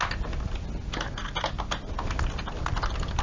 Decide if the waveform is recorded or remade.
recorded